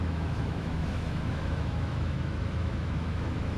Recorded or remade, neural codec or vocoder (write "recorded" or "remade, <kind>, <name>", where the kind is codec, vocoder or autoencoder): remade, autoencoder, DAC-VAE